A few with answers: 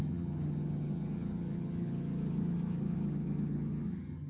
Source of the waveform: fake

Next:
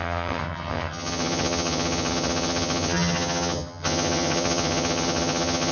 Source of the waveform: fake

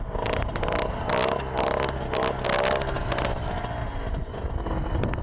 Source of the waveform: real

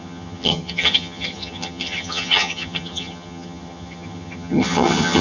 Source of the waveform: fake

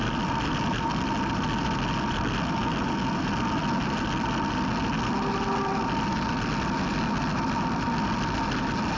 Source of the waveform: real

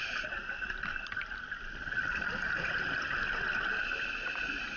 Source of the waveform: real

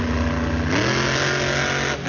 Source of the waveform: real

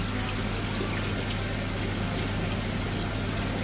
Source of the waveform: real